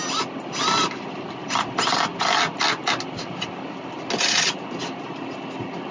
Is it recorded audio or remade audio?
recorded